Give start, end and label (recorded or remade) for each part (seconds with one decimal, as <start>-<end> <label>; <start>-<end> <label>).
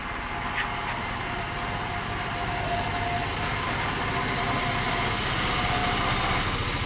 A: 0.0-6.9 recorded